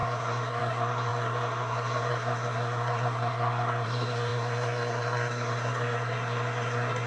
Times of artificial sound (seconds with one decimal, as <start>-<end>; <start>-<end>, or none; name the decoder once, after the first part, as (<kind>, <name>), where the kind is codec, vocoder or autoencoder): 0.0-7.1 (codec, SNAC)